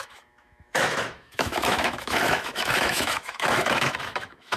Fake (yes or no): yes